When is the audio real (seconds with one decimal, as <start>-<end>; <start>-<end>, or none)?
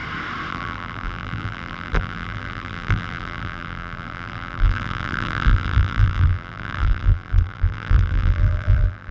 0.0-0.5